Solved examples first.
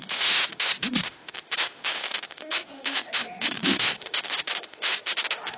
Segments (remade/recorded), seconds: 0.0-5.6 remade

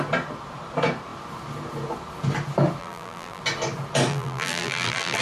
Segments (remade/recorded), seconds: 0.0-2.8 recorded; 2.8-3.4 remade; 3.4-4.1 recorded; 4.1-5.2 remade

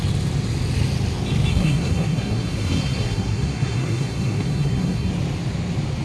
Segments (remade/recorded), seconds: 0.0-1.5 recorded; 1.5-5.1 remade; 5.1-6.0 recorded

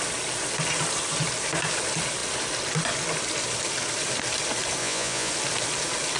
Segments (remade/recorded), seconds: 0.0-4.8 recorded; 4.8-5.3 remade; 5.3-6.2 recorded

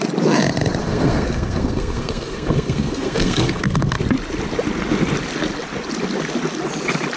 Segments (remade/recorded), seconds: 0.0-0.8 recorded; 0.8-3.9 remade; 3.9-7.2 recorded

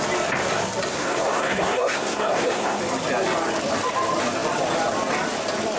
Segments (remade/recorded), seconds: 0.0-0.9 recorded; 0.9-2.8 remade; 2.8-5.8 recorded